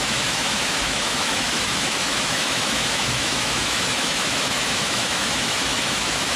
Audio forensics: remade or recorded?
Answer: remade